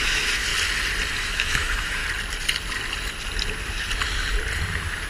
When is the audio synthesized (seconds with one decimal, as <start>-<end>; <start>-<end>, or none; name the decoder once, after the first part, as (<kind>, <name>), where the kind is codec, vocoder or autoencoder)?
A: 0.0-0.5 (autoencoder, DAC-VAE); 1.2-2.0